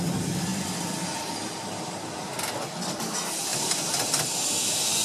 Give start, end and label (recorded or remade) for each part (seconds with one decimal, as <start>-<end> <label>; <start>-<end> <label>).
0.0-5.0 recorded